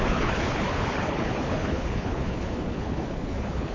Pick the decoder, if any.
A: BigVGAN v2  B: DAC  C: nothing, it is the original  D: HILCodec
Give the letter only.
D